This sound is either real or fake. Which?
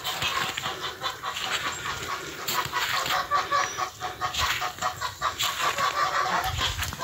real